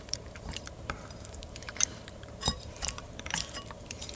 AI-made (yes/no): yes